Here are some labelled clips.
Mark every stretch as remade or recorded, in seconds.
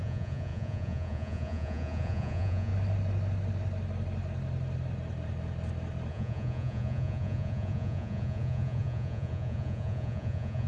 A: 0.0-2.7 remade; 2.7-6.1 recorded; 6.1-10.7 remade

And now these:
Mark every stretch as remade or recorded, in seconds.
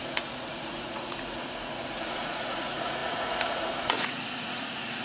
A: 0.0-5.0 remade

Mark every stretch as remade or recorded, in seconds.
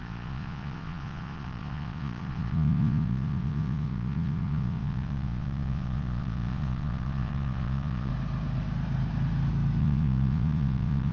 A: 0.0-8.1 remade; 8.1-9.8 recorded; 9.8-11.1 remade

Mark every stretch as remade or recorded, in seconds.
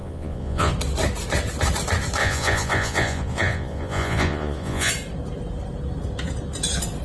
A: 0.0-0.7 remade; 0.7-2.2 recorded; 2.2-4.9 remade; 4.9-7.0 recorded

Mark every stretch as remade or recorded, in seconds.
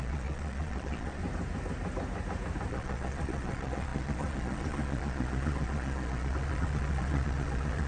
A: 0.0-1.2 remade; 1.2-2.7 recorded; 2.7-7.9 remade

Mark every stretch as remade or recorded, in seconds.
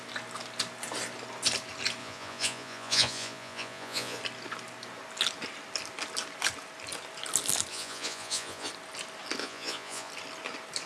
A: 0.0-2.0 recorded; 2.0-4.2 remade; 4.2-7.7 recorded; 7.7-8.7 remade; 8.7-9.4 recorded; 9.4-10.1 remade; 10.1-10.9 recorded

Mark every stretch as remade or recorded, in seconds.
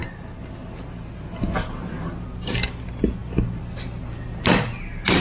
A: 0.0-5.2 recorded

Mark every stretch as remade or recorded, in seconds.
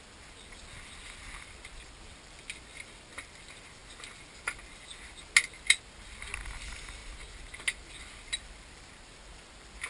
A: 0.0-9.9 recorded